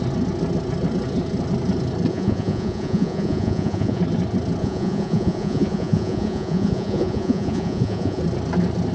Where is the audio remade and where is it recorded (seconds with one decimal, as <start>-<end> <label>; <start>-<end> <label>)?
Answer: 0.0-2.1 recorded; 2.1-4.0 remade; 4.0-4.6 recorded; 4.6-8.2 remade; 8.2-8.9 recorded